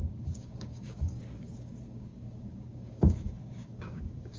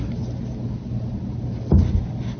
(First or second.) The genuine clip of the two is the second